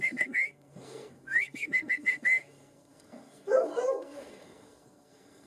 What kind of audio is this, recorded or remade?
remade